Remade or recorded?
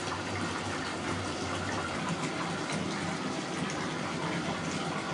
recorded